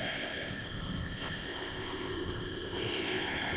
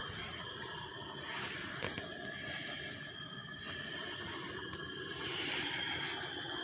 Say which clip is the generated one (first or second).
first